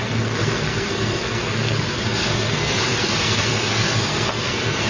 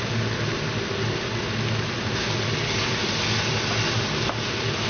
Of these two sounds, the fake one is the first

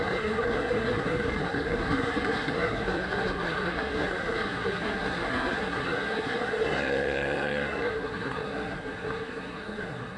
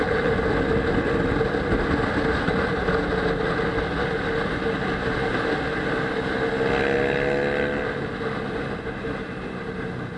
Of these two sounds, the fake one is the first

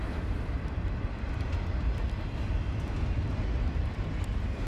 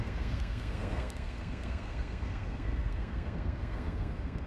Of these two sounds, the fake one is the second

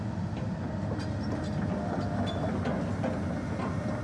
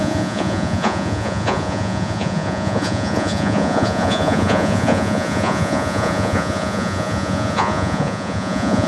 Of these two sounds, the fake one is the second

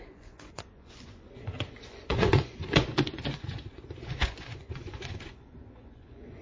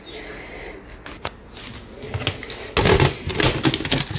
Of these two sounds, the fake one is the first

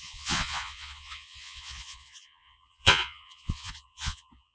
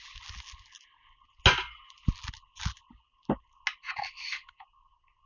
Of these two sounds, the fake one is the first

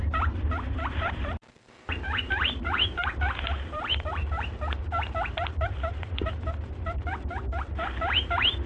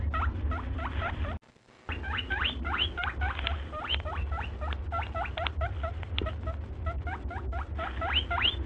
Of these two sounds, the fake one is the first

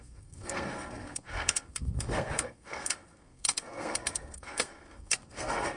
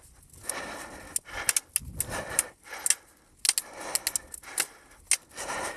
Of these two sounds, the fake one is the first